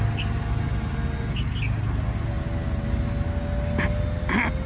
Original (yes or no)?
yes